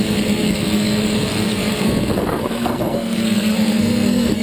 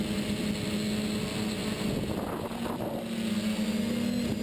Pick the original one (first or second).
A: second